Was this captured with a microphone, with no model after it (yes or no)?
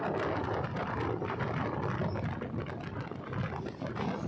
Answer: yes